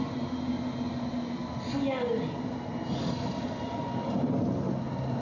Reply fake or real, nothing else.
real